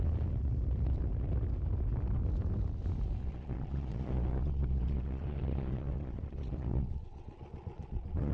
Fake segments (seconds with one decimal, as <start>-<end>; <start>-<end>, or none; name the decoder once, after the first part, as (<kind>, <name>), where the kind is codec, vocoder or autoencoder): 3.2-8.3 (vocoder, Vocos)